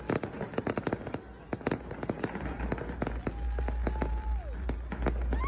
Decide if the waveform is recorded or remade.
recorded